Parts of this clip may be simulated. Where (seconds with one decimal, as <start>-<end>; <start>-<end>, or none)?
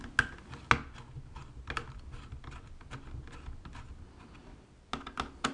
none